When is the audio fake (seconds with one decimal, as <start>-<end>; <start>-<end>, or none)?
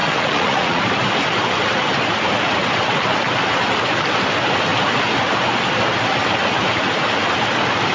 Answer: 0.0-0.8